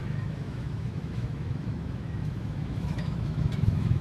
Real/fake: fake